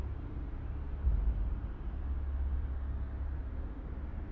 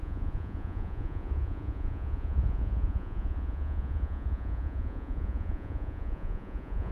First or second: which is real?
first